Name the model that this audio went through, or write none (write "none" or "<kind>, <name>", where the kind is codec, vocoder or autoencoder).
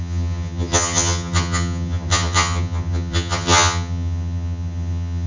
vocoder, HiFi-GAN